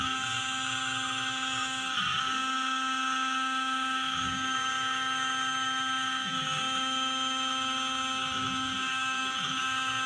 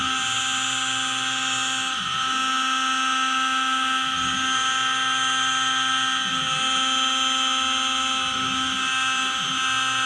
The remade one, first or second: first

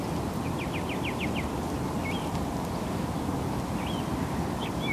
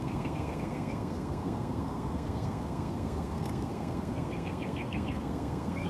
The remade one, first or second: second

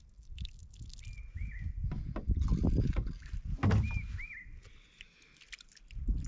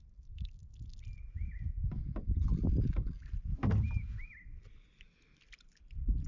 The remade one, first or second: second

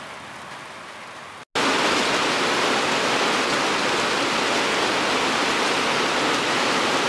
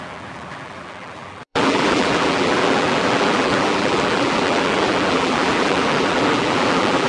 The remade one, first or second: second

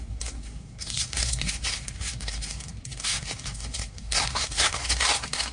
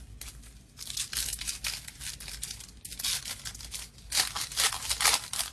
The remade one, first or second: first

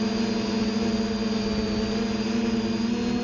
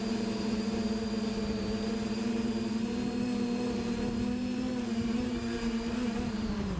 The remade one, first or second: second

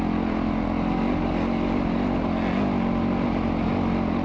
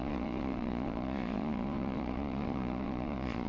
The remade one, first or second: second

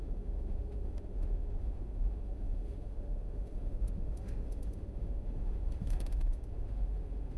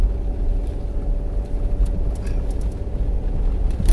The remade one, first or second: first